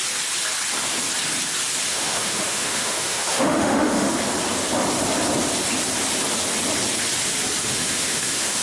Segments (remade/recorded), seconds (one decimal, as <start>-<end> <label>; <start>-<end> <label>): 0.0-1.9 recorded; 1.9-4.1 remade; 4.1-7.6 recorded; 7.6-8.6 remade